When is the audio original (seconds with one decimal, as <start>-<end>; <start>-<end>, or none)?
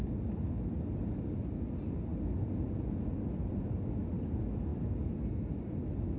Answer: 0.0-6.2